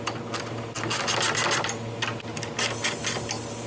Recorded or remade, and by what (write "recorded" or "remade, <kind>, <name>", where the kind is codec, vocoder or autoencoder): recorded